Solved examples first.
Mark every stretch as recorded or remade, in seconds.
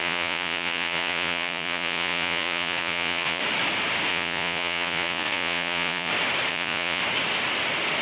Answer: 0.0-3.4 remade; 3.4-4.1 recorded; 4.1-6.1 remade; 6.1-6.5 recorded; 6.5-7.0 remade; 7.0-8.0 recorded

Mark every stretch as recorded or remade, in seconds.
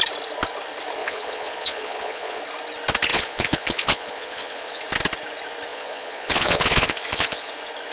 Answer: 0.0-1.0 recorded; 1.0-2.4 remade; 2.4-3.1 recorded; 3.1-4.8 remade; 4.8-5.7 recorded; 5.7-7.5 remade; 7.5-7.9 recorded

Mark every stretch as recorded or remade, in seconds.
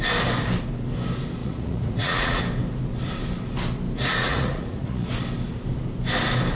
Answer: 0.0-1.4 recorded; 1.4-2.4 remade; 2.4-4.2 recorded; 4.2-5.1 remade; 5.1-6.5 recorded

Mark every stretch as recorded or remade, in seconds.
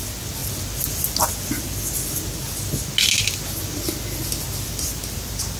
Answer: 0.0-5.6 recorded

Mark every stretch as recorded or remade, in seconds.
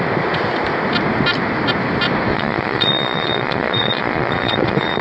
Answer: 0.0-2.3 recorded; 2.3-5.0 remade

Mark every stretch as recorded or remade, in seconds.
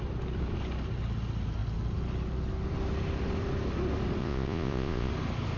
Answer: 0.0-4.2 recorded; 4.2-5.1 remade; 5.1-5.6 recorded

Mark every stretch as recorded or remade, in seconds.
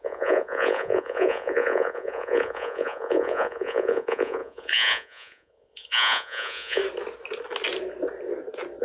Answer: 0.0-6.8 remade; 6.8-8.8 recorded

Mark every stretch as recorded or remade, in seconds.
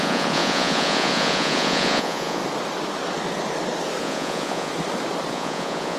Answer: 0.0-2.4 remade; 2.4-4.0 recorded; 4.0-4.7 remade; 4.7-5.3 recorded; 5.3-6.0 remade